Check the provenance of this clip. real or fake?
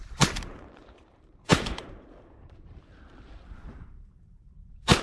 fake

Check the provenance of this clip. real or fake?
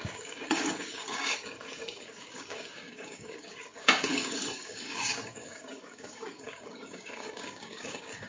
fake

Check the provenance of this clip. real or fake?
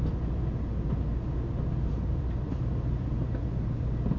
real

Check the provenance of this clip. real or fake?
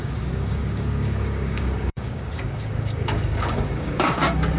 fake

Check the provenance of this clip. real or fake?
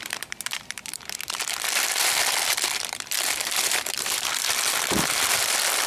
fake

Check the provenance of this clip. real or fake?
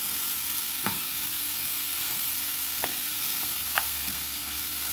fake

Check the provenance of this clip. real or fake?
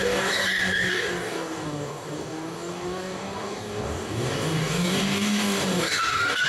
fake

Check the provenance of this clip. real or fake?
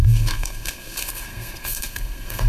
fake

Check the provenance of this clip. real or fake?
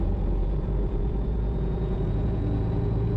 fake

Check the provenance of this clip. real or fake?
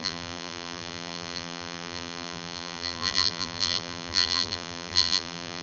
fake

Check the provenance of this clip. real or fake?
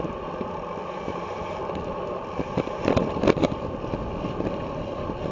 real